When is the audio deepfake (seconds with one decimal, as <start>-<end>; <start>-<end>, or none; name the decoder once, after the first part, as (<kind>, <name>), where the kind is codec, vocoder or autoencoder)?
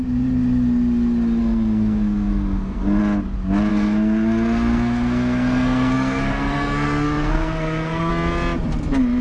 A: 1.4-3.0 (codec, SNAC); 3.7-8.1